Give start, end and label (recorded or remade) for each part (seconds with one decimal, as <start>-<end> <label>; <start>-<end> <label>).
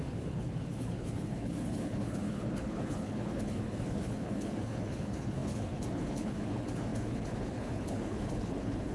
0.0-8.9 remade